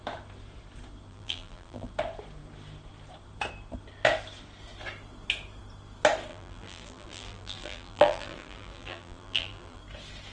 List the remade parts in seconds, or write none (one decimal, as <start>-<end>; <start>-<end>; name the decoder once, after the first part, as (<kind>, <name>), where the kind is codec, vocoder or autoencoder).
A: 1.1-1.9 (vocoder, BigVGAN v2); 6.3-9.8